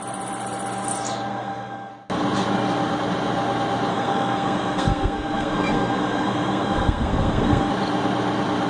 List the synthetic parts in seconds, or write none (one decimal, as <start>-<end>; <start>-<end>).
1.3-1.9; 3.9-7.7